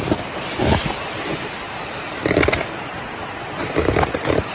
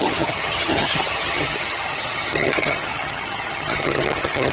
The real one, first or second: first